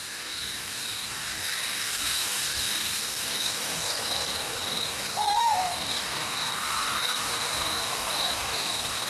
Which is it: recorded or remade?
remade